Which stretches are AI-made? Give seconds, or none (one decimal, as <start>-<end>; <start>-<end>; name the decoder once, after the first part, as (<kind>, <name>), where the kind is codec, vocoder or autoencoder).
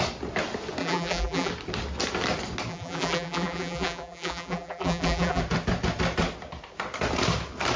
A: 0.8-1.5 (vocoder, BigVGAN v2); 2.7-5.4